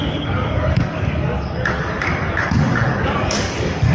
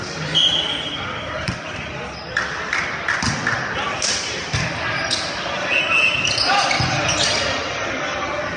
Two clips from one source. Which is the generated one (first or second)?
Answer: first